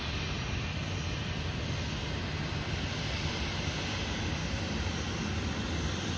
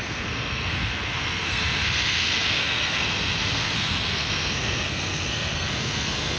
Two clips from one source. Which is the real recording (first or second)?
first